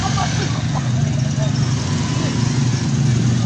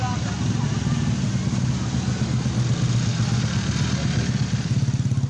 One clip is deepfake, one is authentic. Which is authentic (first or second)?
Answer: second